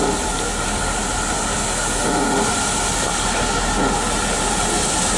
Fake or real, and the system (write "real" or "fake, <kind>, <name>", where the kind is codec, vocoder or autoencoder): real